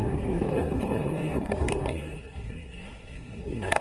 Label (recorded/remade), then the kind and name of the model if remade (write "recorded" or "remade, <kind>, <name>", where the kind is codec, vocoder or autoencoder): remade, codec, SNAC